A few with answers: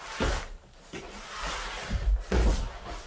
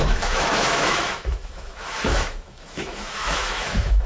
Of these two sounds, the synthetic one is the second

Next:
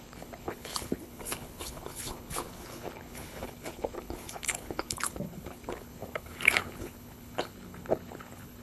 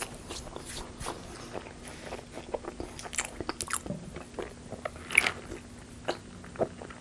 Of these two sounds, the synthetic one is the first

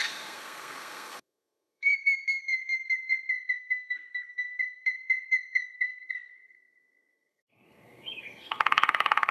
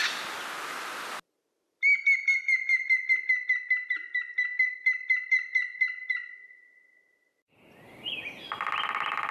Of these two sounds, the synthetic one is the first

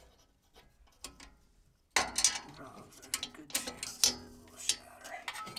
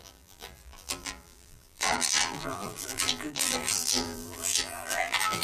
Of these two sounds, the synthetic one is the second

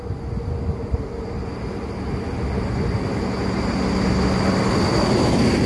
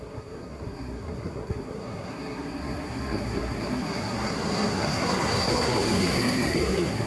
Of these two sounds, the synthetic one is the second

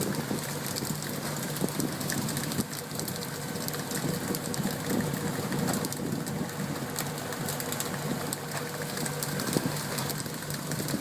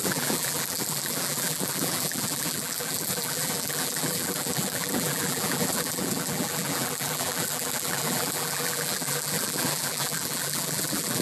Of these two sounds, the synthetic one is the second